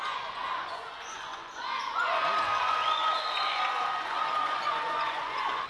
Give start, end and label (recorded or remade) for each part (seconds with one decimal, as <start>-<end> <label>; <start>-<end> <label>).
0.0-5.7 remade